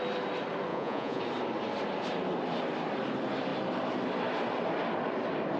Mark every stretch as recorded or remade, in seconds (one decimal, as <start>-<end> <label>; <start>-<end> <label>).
0.0-0.7 recorded; 0.7-1.2 remade; 1.2-5.6 recorded